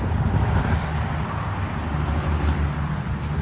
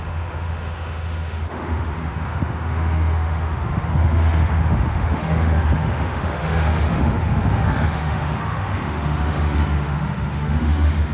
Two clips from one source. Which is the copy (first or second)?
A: second